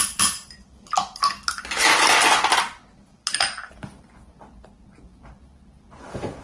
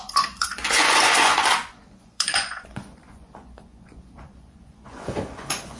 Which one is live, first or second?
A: first